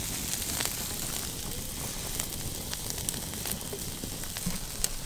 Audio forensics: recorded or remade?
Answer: recorded